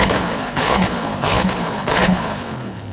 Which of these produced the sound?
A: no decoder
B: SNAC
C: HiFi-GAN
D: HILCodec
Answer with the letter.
D